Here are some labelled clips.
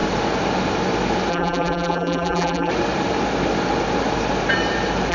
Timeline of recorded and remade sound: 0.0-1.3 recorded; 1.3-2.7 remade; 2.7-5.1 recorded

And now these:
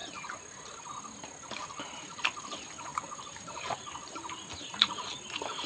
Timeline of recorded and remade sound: 0.0-2.9 recorded; 2.9-4.3 remade; 4.3-5.7 recorded